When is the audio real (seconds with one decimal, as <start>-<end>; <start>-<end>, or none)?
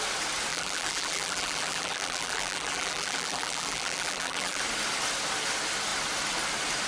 0.0-0.5; 4.6-6.9